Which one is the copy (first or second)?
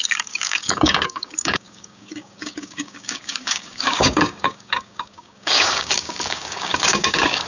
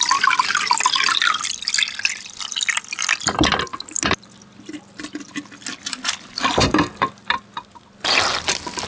first